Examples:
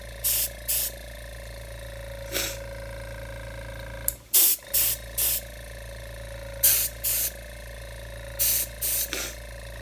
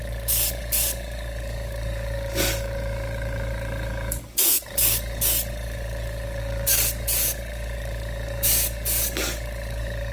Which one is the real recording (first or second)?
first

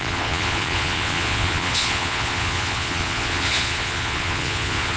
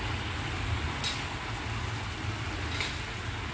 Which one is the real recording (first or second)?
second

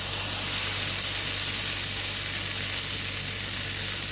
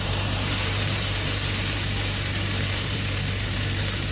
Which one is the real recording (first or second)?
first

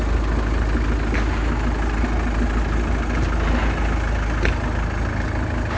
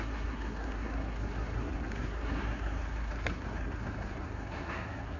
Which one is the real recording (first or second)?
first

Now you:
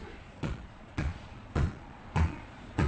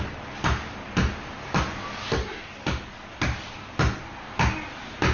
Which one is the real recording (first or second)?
second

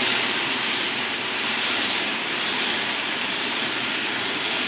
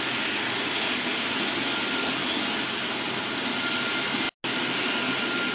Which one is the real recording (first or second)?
second